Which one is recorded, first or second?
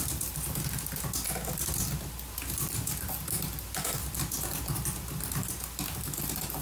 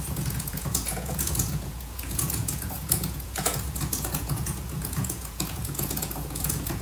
first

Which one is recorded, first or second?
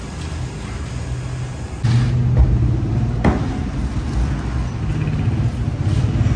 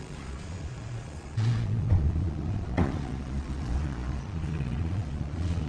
first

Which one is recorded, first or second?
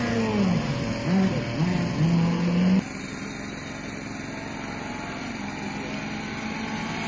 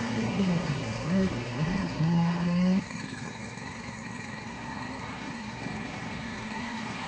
first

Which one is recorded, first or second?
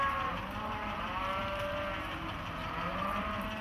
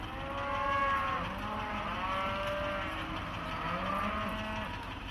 second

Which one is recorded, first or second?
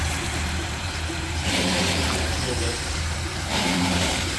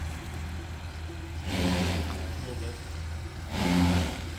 second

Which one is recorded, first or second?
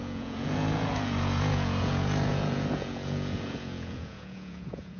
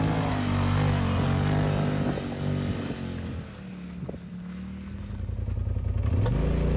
second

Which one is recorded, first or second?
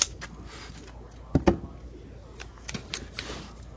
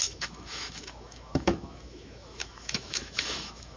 first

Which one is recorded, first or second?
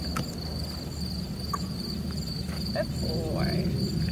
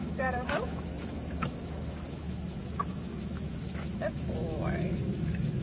first